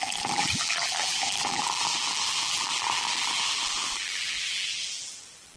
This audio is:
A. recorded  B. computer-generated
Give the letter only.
B